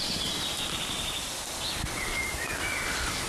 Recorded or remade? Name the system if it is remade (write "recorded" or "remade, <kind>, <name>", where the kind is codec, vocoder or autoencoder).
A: recorded